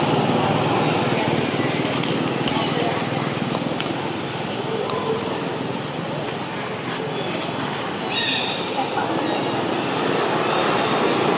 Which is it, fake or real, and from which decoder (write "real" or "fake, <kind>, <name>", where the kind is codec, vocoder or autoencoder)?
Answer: real